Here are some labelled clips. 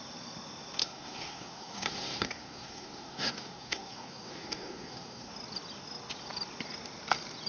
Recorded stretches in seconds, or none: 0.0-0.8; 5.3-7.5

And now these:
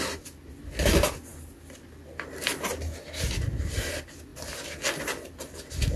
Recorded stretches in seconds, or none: 0.0-6.0

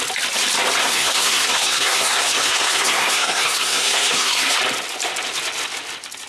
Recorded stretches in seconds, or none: 0.0-0.8; 4.6-6.3